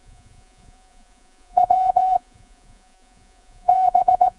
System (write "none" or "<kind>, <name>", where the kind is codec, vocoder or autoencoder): vocoder, Vocos